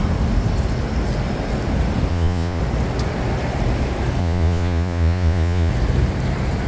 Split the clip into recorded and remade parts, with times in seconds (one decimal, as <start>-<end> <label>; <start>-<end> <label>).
0.0-2.1 recorded; 2.1-2.6 remade; 2.6-4.2 recorded; 4.2-5.7 remade; 5.7-6.7 recorded